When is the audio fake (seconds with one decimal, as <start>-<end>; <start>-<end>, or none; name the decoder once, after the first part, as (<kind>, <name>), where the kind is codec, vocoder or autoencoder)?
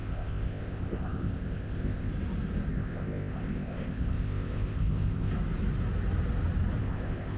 0.0-2.1 (codec, ZipCodec); 2.7-5.3; 6.8-7.4